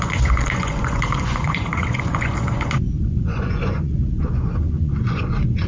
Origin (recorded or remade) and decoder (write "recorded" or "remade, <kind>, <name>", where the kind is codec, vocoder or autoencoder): remade, vocoder, Vocos